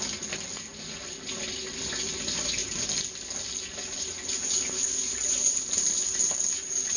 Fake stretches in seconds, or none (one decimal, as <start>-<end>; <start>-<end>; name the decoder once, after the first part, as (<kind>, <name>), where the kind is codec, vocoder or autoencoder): none

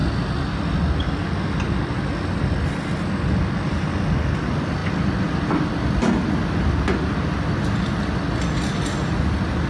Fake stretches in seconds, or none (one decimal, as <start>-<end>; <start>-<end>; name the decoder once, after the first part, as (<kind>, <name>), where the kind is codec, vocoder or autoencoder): none

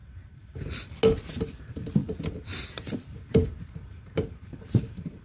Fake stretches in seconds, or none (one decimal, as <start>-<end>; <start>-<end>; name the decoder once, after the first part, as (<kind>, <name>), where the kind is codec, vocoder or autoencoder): 0.0-1.0 (vocoder, BigVGAN v2); 2.0-5.2

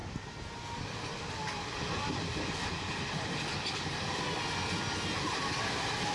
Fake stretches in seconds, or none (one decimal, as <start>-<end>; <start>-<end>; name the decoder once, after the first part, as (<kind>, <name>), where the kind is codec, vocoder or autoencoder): none

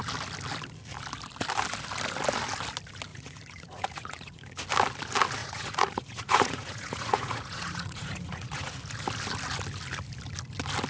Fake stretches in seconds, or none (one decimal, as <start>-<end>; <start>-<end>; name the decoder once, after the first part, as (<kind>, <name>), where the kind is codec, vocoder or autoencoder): 3.1-4.4 (vocoder, Vocos); 5.4-8.7

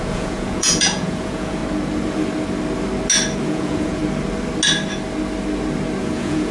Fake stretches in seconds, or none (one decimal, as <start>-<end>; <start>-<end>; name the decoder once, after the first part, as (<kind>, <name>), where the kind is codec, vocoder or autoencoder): 0.0-1.6 (vocoder, Vocos); 3.4-4.0; 6.0-6.5

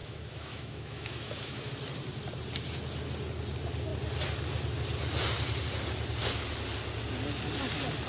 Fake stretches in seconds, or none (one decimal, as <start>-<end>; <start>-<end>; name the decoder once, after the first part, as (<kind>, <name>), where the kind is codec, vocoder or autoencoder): 0.0-1.7 (autoencoder, DAC-VAE)